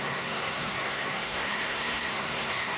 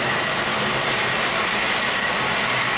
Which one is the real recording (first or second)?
second